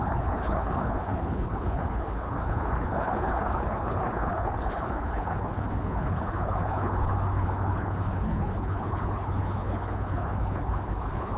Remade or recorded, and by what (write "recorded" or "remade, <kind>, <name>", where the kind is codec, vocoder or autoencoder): remade, codec, HILCodec